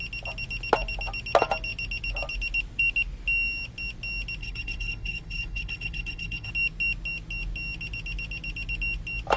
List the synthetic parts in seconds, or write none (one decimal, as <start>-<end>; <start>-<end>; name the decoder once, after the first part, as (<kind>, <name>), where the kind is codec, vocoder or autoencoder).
4.4-6.5 (codec, HILCodec)